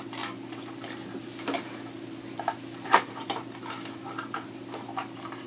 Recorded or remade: recorded